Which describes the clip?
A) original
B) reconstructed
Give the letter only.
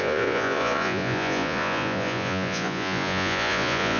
B